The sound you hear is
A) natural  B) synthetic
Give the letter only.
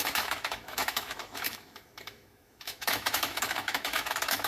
B